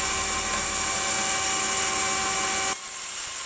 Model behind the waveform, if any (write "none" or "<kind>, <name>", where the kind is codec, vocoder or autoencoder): none